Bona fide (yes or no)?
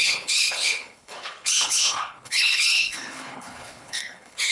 no